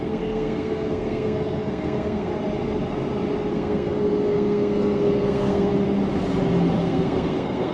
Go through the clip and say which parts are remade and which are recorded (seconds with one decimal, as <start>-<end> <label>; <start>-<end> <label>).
0.0-2.3 remade; 2.3-3.5 recorded; 3.5-5.7 remade; 5.7-6.8 recorded; 6.8-7.7 remade